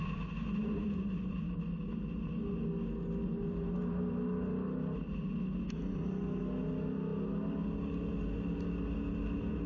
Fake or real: real